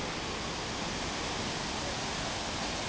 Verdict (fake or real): real